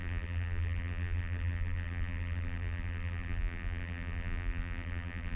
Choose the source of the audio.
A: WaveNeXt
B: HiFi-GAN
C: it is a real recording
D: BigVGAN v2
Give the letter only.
D